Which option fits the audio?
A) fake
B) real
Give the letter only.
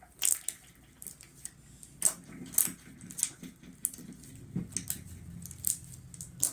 B